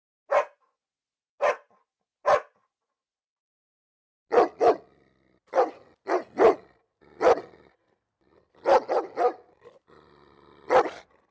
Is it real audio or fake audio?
real